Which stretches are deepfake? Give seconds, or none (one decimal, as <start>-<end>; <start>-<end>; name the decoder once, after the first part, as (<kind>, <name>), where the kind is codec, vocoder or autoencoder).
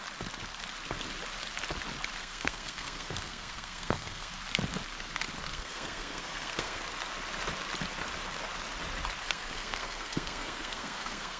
2.2-4.3 (codec, SNAC); 5.5-6.8; 9.2-11.4